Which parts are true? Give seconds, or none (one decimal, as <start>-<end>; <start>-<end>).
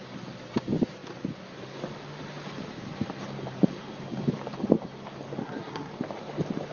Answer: 0.0-5.4; 5.9-6.7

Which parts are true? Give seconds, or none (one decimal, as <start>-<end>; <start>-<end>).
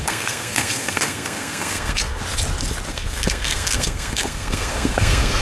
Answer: 2.2-2.9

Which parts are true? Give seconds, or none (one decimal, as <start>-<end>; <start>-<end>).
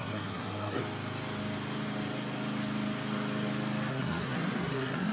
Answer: 0.8-3.9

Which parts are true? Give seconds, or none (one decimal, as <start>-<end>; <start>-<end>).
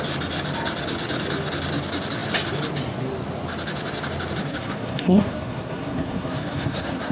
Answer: 0.0-4.4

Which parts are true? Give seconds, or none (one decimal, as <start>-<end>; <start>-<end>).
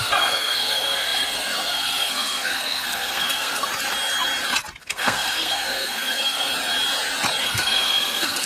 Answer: 3.7-4.8; 6.5-7.4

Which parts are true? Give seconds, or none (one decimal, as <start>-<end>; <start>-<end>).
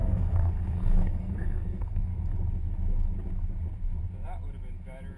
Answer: 2.1-5.2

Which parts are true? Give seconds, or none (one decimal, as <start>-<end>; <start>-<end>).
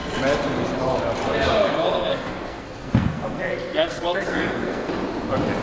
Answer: 0.0-1.6; 4.9-5.6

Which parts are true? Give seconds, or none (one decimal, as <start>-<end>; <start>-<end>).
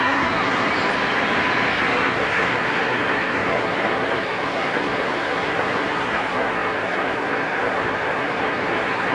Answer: 0.7-1.7